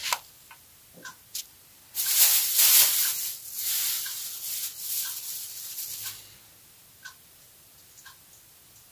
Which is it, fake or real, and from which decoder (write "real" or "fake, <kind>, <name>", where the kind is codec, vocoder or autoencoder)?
real